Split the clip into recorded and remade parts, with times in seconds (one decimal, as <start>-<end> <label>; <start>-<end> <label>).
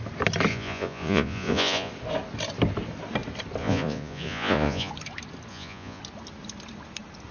0.0-0.5 recorded; 0.5-1.9 remade; 1.9-3.6 recorded; 3.6-4.9 remade; 4.9-5.5 recorded; 5.5-6.0 remade; 6.0-7.3 recorded